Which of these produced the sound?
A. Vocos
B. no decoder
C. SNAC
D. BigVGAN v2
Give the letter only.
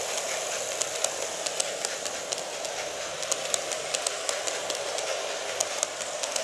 B